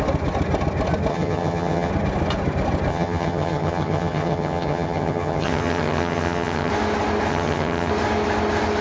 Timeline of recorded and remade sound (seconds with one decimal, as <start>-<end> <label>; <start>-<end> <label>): 0.0-1.1 recorded; 1.1-1.9 remade; 1.9-2.9 recorded; 2.9-6.7 remade; 6.7-7.3 recorded; 7.3-7.9 remade; 7.9-8.8 recorded